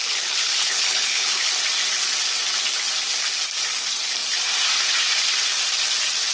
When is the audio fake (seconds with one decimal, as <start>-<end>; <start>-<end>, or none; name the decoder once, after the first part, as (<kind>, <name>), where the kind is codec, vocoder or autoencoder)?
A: 0.0-1.5 (codec, HILCodec)